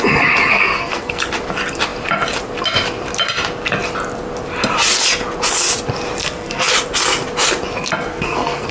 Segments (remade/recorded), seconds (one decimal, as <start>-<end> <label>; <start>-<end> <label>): 0.0-0.5 recorded; 0.5-1.2 remade; 1.2-6.2 recorded; 6.2-6.7 remade; 6.7-8.1 recorded; 8.1-8.7 remade